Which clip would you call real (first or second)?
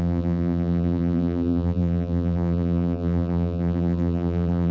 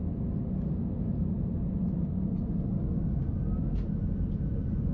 second